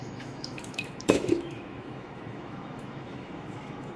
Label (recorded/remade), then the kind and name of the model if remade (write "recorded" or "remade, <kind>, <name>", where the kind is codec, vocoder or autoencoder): remade, autoencoder, DAC-VAE